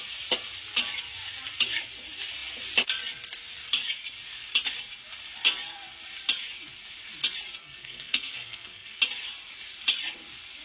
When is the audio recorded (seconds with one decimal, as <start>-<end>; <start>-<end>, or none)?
0.0-7.6; 9.0-10.6